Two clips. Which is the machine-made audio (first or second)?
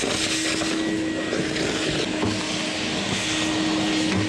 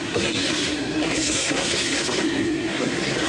second